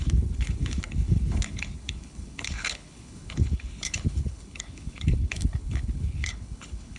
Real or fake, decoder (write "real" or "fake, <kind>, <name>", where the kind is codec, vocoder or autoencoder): fake, codec, HILCodec